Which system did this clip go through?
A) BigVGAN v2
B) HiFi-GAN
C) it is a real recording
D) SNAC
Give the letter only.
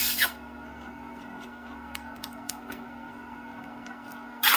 D